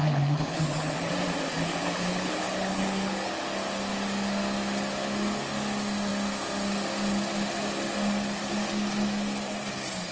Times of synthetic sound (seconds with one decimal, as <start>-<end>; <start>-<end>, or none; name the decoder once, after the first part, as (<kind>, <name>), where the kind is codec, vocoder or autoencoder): 0.0-1.1 (codec, HILCodec); 1.5-3.3